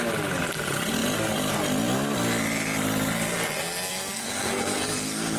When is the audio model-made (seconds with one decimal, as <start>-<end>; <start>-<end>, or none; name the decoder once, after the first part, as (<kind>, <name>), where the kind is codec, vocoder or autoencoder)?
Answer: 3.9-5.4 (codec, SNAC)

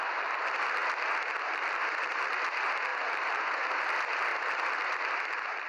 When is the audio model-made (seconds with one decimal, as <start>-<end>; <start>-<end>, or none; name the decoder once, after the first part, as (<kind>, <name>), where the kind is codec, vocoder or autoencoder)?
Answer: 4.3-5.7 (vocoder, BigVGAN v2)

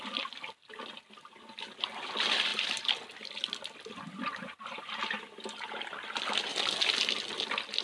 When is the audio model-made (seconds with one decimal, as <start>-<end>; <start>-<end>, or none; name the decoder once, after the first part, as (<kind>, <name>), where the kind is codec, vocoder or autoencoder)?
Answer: none